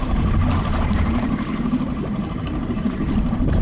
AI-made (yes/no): yes